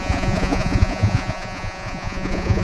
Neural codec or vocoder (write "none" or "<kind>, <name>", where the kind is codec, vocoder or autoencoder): vocoder, Vocos